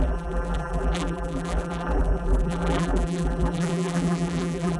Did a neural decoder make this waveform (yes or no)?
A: yes